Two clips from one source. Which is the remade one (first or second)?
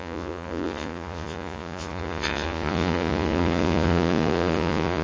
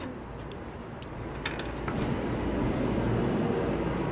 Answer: first